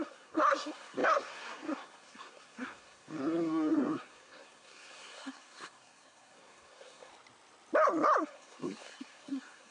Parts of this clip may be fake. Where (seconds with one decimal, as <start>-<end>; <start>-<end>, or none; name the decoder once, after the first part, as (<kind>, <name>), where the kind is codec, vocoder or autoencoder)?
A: 0.0-7.1 (codec, SNAC); 8.2-9.7